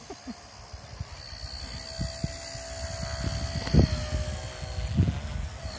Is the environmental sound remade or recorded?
recorded